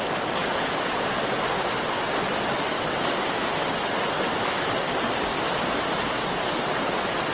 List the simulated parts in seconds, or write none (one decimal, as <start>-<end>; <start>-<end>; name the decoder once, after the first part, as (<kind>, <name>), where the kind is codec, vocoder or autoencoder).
0.4-1.1 (vocoder, Vocos)